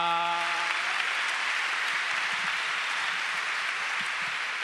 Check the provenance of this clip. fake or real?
fake